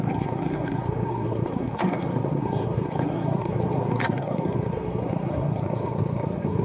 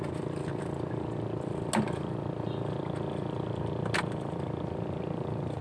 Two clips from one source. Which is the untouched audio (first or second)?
second